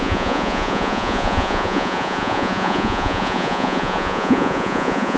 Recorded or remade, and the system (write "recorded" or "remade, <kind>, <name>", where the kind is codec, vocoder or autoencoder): remade, vocoder, Vocos